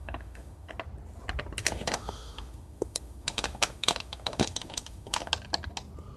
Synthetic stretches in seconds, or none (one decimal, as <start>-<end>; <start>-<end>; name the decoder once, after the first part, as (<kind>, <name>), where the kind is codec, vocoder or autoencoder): 0.0-0.7 (autoencoder, DAC-VAE); 1.6-5.3